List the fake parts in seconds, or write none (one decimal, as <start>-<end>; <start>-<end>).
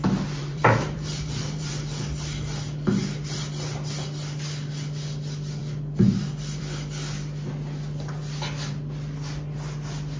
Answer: 0.4-1.7